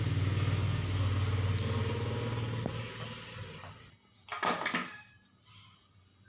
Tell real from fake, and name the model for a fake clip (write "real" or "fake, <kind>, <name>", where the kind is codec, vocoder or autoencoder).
real